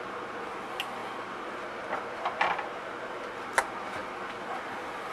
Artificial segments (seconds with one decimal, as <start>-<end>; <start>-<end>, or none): none

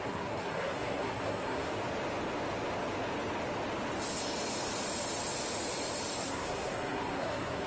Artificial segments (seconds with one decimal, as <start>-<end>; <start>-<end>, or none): 0.0-1.7; 6.2-7.7

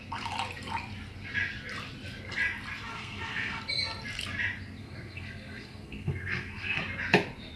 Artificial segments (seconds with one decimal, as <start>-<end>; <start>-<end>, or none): 2.9-3.6; 4.8-6.8